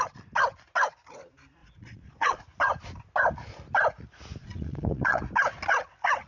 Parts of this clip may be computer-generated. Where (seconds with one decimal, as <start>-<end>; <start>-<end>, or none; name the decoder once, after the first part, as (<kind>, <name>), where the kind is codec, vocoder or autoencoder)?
1.6-2.4 (vocoder, Vocos); 4.4-5.2